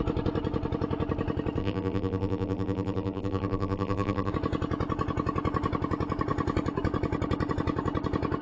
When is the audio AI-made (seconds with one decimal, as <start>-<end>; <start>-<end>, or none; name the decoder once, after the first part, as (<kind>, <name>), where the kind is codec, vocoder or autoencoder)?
1.6-4.3 (vocoder, BigVGAN v2)